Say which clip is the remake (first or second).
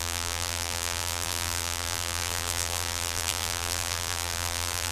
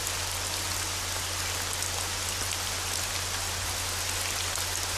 first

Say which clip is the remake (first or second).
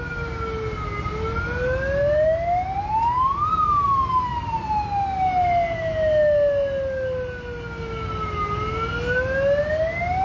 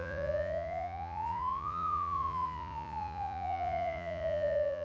second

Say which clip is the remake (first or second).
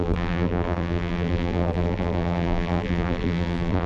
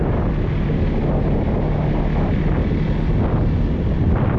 first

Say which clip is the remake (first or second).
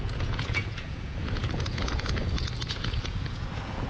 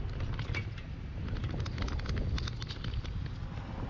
first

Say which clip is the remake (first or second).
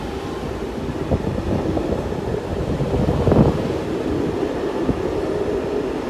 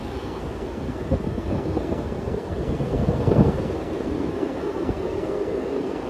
second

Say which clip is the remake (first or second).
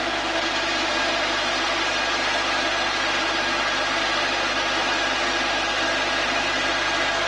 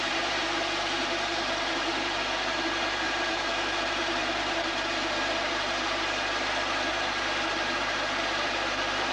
second